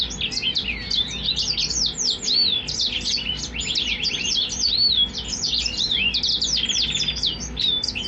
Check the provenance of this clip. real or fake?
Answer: real